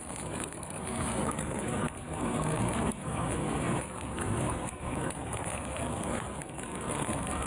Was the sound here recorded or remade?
remade